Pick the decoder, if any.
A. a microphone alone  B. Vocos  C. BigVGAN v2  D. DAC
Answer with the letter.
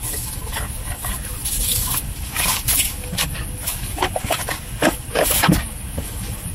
D